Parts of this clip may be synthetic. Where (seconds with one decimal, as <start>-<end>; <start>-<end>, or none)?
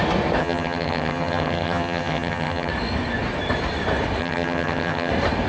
0.4-2.7; 4.2-5.1